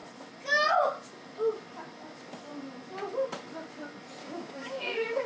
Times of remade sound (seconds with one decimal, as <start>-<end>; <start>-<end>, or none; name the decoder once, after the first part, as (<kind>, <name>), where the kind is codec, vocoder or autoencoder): 4.2-5.3 (codec, DAC)